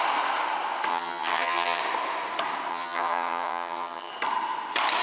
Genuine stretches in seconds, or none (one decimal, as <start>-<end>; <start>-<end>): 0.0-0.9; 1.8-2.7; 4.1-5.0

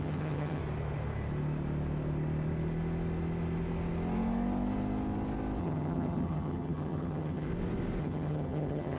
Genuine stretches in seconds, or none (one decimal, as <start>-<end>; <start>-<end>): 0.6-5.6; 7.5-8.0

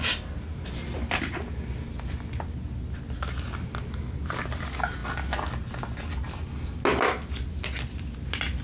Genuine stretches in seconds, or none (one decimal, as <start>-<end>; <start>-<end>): 0.0-8.6

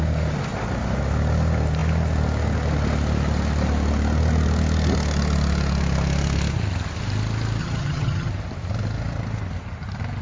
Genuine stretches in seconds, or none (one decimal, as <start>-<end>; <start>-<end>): 0.0-7.6; 8.3-10.2

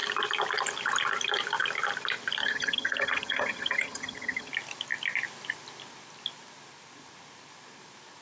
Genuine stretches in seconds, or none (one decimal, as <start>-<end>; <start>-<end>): 0.0-2.4; 4.5-8.2